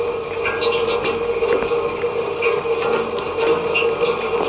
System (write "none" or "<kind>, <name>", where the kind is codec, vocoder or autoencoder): none